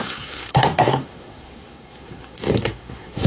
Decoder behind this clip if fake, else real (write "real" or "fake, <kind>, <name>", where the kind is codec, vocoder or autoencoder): fake, codec, SNAC